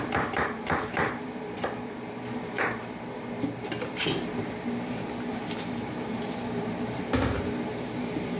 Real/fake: fake